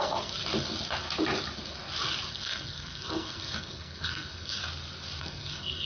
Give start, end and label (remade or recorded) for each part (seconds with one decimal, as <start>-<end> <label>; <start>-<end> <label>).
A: 0.0-0.4 remade; 0.4-2.3 recorded; 2.3-4.6 remade; 4.6-5.2 recorded; 5.2-5.9 remade